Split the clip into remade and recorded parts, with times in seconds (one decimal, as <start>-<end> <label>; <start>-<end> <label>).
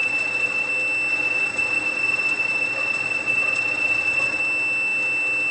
0.0-0.7 remade; 0.7-1.1 recorded; 1.1-4.4 remade; 4.4-5.5 recorded